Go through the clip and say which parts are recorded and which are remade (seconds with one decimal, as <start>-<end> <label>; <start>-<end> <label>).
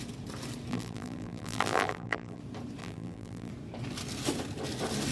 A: 0.0-0.7 recorded; 0.7-2.4 remade; 2.4-2.8 recorded; 2.8-3.5 remade; 3.5-5.1 recorded